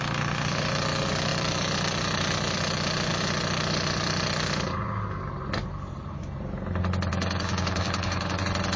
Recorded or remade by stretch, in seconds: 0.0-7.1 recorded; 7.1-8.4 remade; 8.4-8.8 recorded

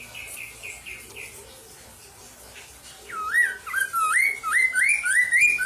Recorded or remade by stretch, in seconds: 0.0-5.7 recorded